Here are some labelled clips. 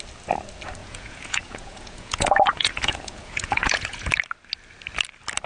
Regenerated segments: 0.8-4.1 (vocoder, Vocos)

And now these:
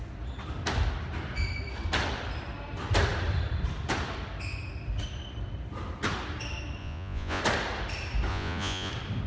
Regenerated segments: 6.8-7.4 (vocoder, Vocos); 8.3-8.9

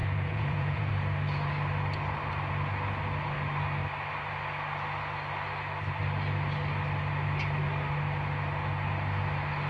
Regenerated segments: 0.0-0.9 (vocoder, Vocos)

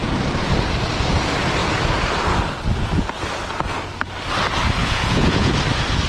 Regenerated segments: 4.8-5.5 (vocoder, Vocos)

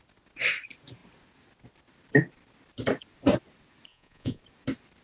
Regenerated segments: 3.9-4.4 (vocoder, Vocos)

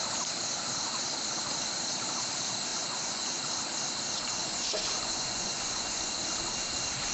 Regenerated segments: 2.7-3.4 (vocoder, Vocos); 4.4-6.2

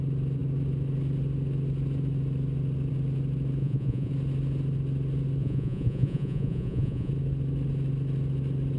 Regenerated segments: 3.6-4.1 (vocoder, Vocos); 5.4-7.1

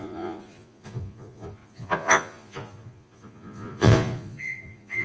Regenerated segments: 0.0-5.0 (vocoder, Vocos)